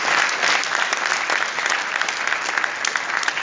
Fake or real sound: real